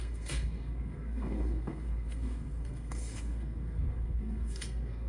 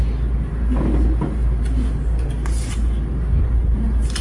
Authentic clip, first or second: second